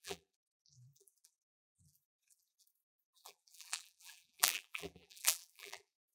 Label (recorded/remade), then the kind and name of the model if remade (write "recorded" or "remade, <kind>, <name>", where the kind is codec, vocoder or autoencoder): remade, vocoder, BigVGAN v2